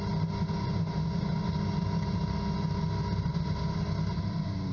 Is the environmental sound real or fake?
real